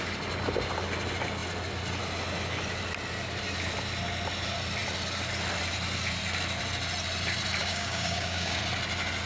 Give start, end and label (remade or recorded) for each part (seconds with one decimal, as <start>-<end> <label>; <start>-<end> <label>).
0.0-7.6 recorded; 7.6-8.6 remade; 8.6-9.3 recorded